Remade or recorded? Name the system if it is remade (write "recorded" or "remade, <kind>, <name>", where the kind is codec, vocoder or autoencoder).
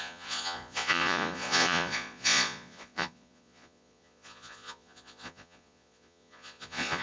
remade, vocoder, Vocos